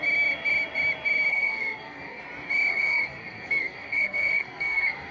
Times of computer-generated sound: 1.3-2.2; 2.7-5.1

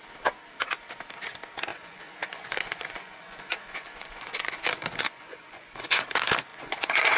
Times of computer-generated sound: 1.7-6.0; 6.5-7.2

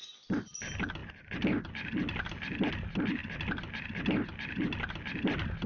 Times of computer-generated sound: none

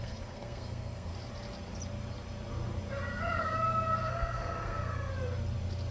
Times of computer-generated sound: 0.0-1.1; 4.1-5.1

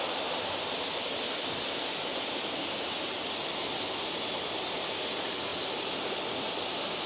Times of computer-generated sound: none

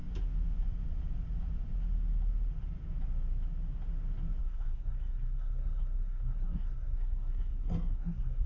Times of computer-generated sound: 4.4-8.5

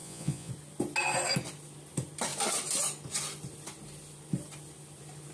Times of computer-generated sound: 0.0-0.5

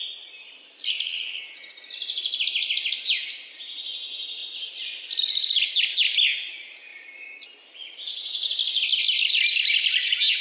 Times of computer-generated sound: none